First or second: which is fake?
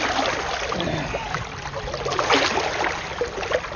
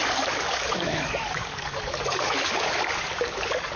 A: second